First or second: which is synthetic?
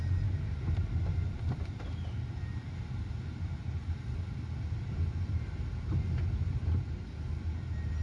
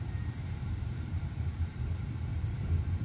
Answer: second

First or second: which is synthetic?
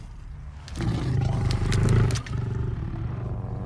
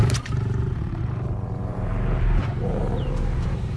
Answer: second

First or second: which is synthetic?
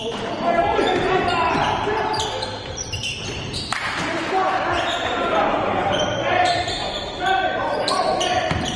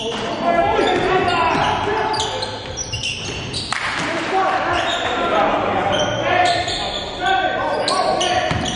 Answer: first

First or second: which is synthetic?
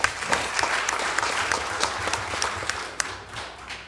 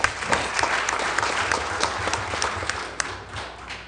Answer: first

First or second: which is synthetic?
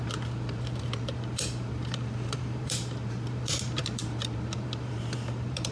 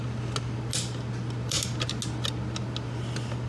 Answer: first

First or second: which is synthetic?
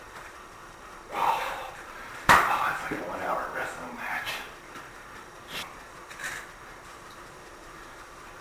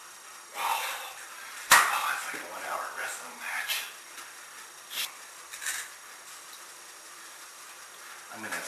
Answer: first